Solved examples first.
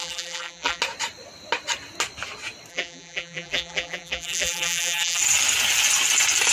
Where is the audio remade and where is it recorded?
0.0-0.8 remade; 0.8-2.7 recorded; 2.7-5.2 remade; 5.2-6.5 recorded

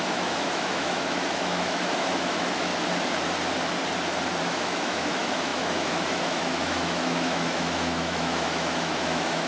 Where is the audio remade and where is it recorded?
0.0-2.7 remade; 2.7-4.4 recorded; 4.4-9.5 remade

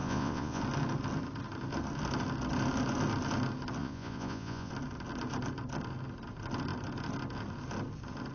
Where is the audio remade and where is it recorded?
0.0-0.6 remade; 0.6-3.8 recorded; 3.8-4.7 remade; 4.7-8.3 recorded

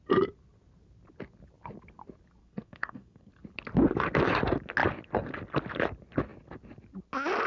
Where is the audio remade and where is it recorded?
0.0-2.4 recorded; 2.4-3.3 remade; 3.3-7.5 recorded

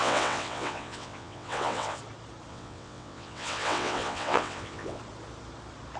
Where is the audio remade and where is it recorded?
0.0-2.0 remade; 2.0-2.5 recorded; 2.5-5.0 remade; 5.0-6.0 recorded

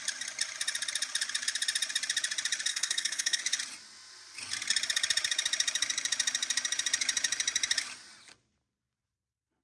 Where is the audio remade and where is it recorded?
0.0-2.7 recorded; 2.7-3.4 remade; 3.4-9.6 recorded

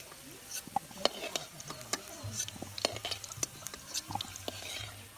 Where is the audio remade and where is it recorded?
0.0-5.2 recorded